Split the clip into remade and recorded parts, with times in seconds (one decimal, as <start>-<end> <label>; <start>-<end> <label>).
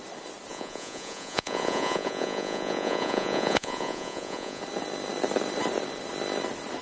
0.0-0.5 recorded; 0.5-4.6 remade; 4.6-6.8 recorded